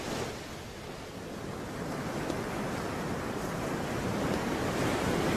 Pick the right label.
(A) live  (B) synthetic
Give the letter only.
A